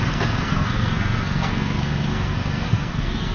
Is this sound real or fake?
fake